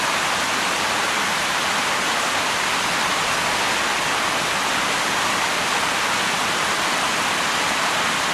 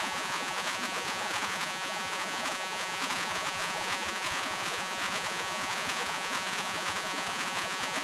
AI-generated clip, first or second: second